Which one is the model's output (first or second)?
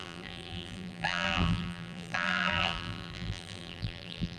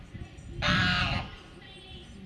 first